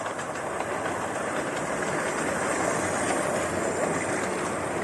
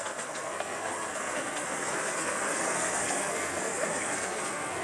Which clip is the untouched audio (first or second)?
first